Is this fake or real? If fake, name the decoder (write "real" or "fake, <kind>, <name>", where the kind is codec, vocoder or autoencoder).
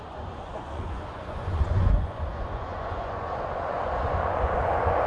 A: fake, vocoder, Vocos